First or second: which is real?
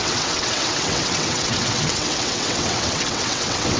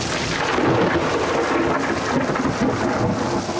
second